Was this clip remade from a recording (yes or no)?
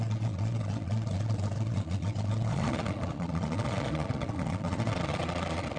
yes